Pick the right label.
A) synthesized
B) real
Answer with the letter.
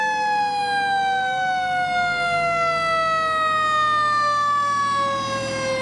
B